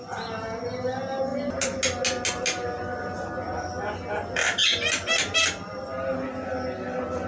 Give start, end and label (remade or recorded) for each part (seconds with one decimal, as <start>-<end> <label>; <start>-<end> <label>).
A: 0.0-7.3 recorded